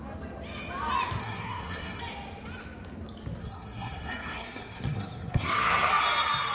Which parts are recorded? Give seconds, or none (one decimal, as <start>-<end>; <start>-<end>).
0.0-1.2; 2.0-3.4; 5.9-6.5